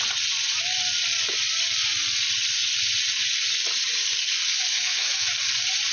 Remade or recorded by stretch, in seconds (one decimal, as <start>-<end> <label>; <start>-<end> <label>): 0.0-4.7 recorded; 4.7-5.3 remade; 5.3-5.9 recorded